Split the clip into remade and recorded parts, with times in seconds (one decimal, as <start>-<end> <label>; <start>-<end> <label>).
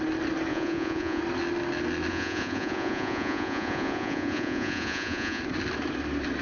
0.0-0.5 recorded; 0.5-1.2 remade; 1.2-2.1 recorded; 2.1-5.4 remade; 5.4-6.4 recorded